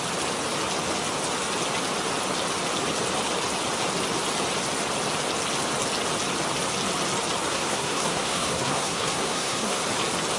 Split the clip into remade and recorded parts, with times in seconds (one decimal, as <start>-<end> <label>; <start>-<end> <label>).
0.0-7.5 recorded; 7.5-9.8 remade; 9.8-10.4 recorded